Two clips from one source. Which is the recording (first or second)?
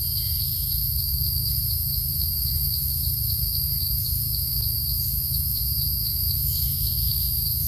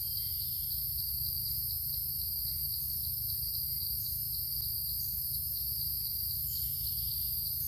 second